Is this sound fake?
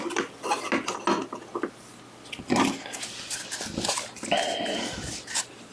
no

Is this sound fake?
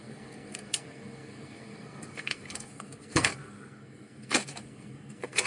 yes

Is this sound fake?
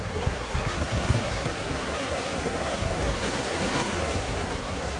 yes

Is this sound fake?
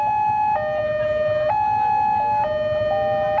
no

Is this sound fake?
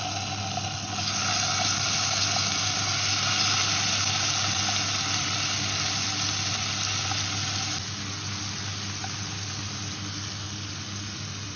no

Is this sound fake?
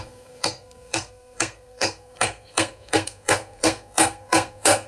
yes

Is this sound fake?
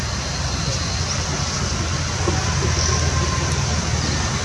no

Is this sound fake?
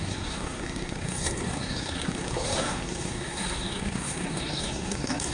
yes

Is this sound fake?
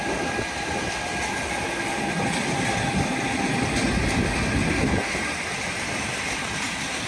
no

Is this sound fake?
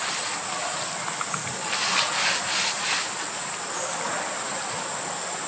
no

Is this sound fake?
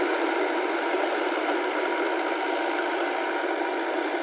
no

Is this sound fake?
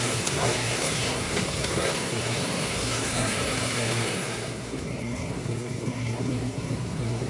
yes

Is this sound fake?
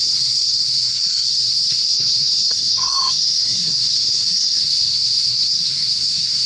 yes